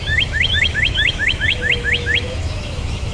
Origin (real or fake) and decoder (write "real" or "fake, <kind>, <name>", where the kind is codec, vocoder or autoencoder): fake, autoencoder, DAC-VAE